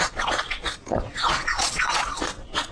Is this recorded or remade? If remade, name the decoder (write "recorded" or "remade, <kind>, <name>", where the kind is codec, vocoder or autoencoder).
remade, vocoder, Vocos